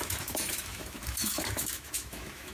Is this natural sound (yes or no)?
no